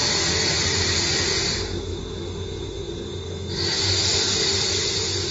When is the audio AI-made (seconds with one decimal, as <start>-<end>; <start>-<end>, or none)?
none